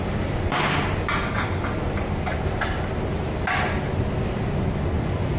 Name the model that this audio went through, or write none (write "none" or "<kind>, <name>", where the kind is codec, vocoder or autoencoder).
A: none